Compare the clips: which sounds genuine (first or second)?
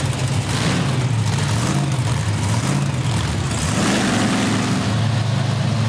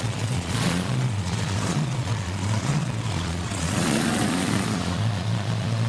first